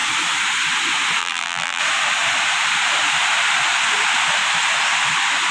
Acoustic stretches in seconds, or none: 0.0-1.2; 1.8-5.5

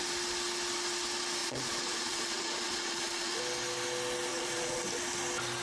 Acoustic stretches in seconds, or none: 0.0-1.4; 3.4-4.3; 4.8-5.6

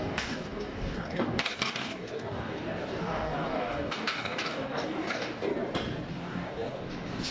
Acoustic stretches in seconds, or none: 5.5-6.1